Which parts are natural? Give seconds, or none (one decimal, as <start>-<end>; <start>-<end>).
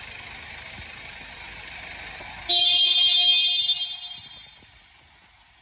0.0-5.6